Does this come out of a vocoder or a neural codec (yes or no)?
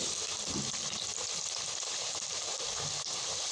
no